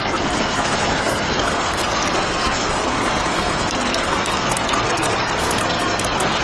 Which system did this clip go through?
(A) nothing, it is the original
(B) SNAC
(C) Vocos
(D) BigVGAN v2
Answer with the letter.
B